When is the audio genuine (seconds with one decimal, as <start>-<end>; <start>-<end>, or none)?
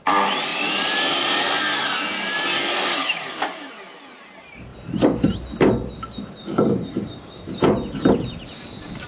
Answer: 0.0-2.9; 3.7-6.4; 7.6-9.1